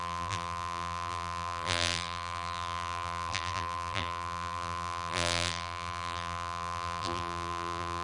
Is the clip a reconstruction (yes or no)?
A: yes